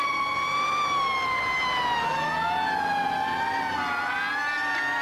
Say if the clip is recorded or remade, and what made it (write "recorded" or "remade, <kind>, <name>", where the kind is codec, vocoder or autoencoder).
recorded